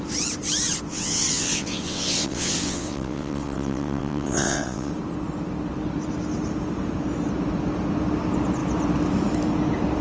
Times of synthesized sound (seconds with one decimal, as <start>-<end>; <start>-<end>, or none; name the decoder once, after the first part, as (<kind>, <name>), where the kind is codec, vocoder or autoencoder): 0.9-4.9 (vocoder, WaveNeXt)